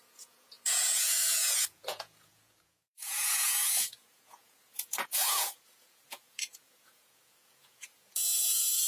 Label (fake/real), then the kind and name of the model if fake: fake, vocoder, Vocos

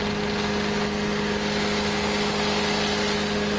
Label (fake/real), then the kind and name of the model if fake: real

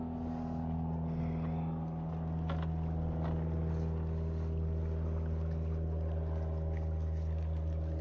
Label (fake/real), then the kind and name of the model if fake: real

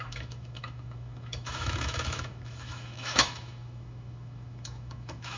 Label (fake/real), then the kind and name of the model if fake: fake, autoencoder, DAC-VAE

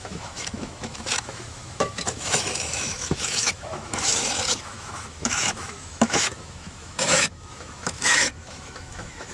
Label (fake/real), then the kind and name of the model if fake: fake, autoencoder, DAC-VAE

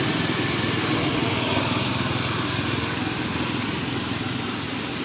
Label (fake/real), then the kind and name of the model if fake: real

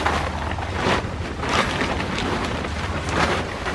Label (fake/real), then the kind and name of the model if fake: real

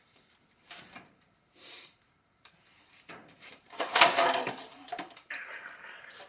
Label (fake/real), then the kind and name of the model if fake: fake, vocoder, BigVGAN v2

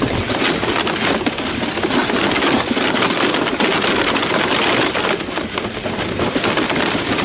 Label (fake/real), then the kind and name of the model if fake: real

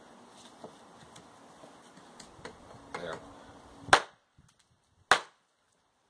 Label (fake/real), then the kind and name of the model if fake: real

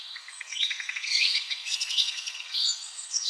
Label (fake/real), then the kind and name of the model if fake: fake, codec, SNAC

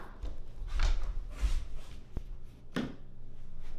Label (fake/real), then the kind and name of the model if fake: real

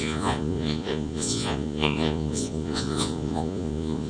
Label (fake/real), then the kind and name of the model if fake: fake, vocoder, Vocos